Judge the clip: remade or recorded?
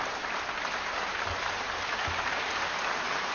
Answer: recorded